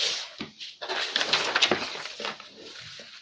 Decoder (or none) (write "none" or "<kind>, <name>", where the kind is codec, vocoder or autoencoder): none